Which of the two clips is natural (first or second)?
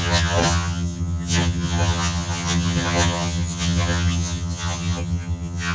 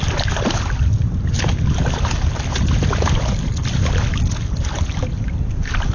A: second